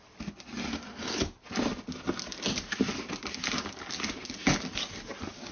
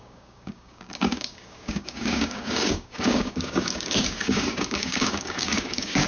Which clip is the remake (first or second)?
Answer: second